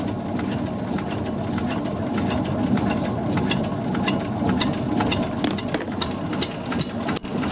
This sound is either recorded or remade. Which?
recorded